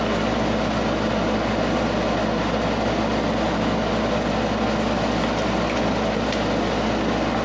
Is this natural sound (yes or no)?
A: yes